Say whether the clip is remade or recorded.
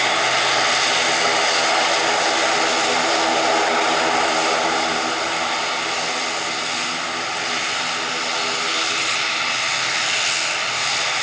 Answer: recorded